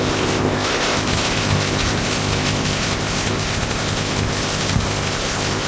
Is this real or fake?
fake